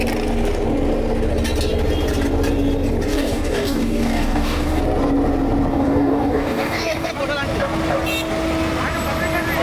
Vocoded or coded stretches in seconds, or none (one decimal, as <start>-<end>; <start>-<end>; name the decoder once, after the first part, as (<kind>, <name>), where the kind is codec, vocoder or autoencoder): 3.1-4.8 (codec, DAC); 5.7-7.1